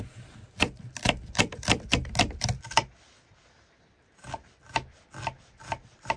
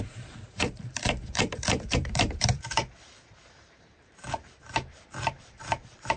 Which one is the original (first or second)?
first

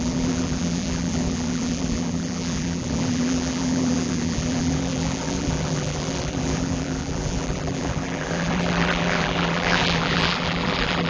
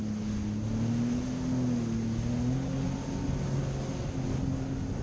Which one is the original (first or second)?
second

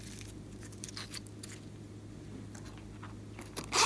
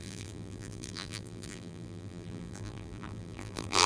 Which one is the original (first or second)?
first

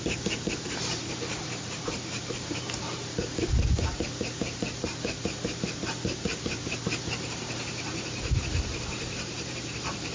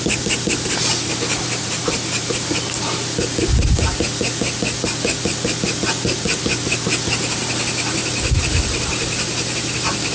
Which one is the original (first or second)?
second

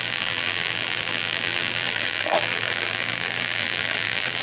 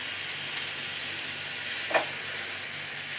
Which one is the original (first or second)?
second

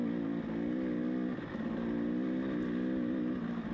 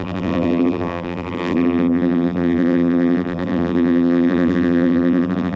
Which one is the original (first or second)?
first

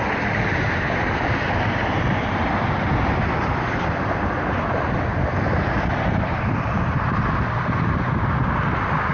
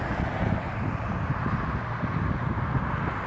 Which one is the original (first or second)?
second